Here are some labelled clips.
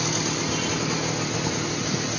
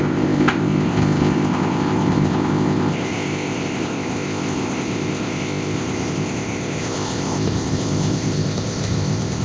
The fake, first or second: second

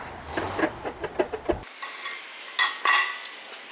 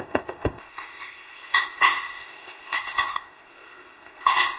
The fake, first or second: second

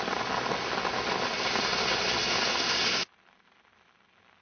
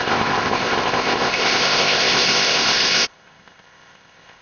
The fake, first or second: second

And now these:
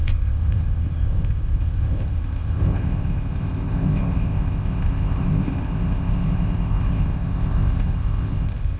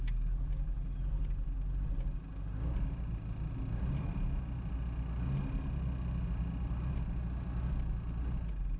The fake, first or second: first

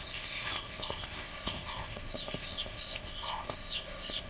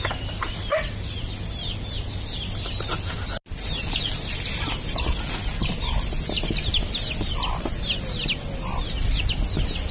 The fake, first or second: first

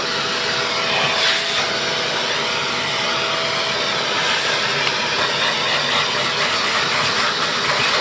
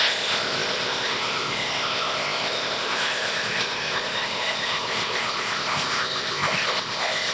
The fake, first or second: second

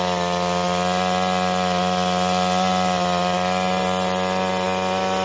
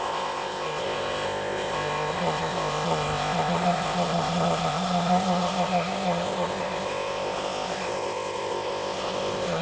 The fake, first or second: second